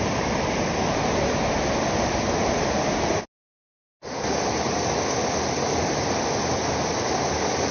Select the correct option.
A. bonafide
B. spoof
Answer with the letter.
A